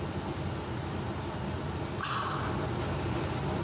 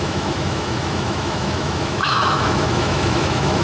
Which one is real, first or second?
first